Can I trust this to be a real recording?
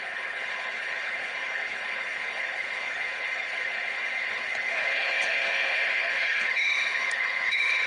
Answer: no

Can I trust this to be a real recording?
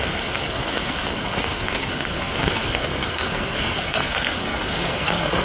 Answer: no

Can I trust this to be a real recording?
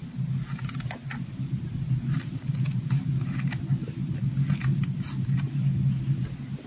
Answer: yes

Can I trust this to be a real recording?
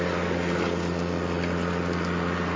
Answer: yes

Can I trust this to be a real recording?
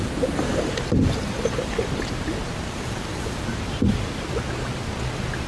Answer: yes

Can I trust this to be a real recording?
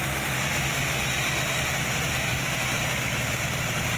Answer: no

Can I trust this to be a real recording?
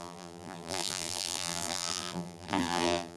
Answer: no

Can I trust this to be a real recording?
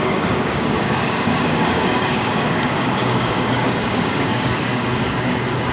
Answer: no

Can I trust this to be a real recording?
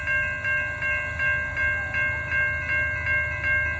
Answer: yes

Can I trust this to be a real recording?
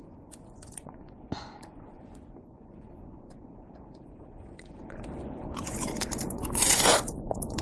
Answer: no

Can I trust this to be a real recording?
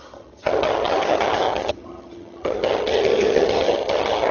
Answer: no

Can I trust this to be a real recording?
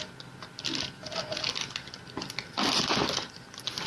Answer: yes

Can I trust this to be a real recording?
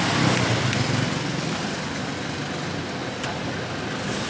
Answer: yes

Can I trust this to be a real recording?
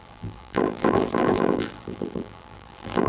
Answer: no